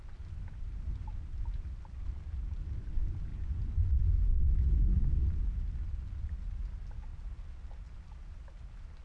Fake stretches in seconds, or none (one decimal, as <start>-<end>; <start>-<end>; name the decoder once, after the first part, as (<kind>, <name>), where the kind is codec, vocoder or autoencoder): 3.3-3.9 (vocoder, Vocos)